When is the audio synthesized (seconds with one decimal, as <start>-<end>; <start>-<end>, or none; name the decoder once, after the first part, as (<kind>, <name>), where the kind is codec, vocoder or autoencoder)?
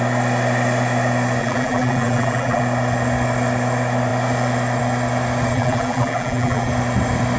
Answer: 1.4-2.6 (vocoder, BigVGAN v2); 5.5-6.7